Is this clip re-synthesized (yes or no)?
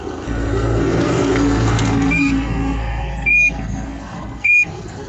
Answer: yes